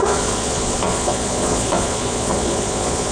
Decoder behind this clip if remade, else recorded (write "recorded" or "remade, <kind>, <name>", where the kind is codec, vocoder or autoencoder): remade, vocoder, Vocos